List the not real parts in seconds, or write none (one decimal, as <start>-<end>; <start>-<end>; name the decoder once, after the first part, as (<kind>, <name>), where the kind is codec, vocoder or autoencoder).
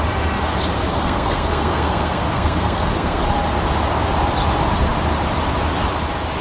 0.9-3.2 (codec, SNAC)